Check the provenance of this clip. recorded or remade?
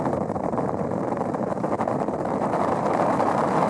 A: remade